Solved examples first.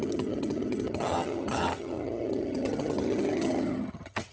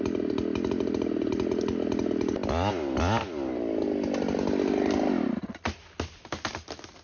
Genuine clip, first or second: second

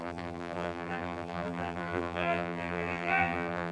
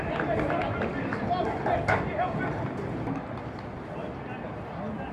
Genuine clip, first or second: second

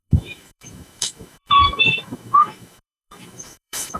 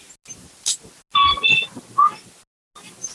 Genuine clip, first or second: second